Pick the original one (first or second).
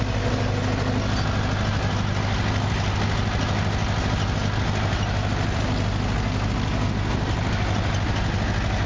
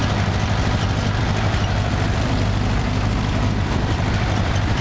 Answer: first